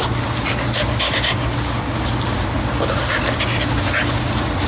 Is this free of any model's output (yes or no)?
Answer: yes